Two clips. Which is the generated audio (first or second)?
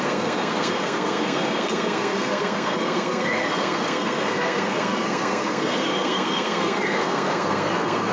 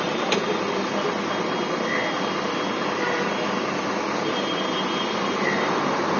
first